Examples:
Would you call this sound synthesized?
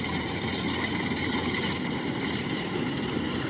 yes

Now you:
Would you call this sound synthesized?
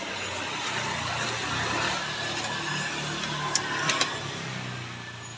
no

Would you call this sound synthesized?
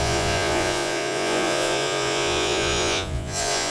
yes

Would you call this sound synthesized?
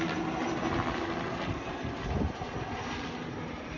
no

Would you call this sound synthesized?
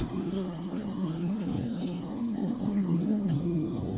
yes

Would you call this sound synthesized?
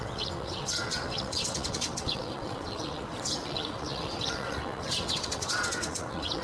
yes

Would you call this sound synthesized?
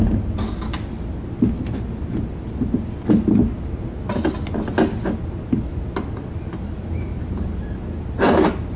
no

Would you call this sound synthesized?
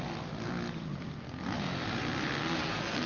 no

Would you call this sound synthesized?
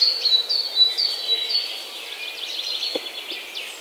no